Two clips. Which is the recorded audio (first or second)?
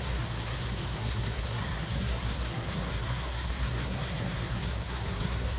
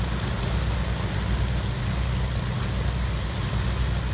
second